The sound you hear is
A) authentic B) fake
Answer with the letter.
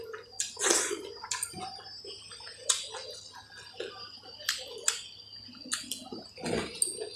A